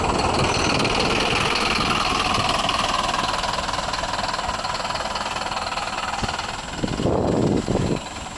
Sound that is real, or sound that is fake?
real